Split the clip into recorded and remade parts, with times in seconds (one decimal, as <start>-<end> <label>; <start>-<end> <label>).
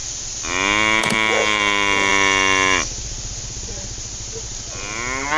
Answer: 0.0-1.0 recorded; 1.0-2.1 remade; 2.1-5.4 recorded